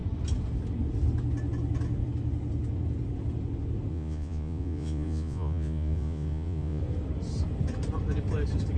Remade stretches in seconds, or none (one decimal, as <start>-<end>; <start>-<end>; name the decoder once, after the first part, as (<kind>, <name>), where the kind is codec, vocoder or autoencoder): 3.9-6.8 (vocoder, Vocos)